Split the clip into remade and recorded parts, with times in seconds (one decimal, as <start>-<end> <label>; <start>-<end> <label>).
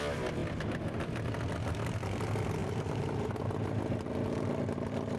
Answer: 0.0-2.6 recorded; 2.6-3.8 remade; 3.8-5.2 recorded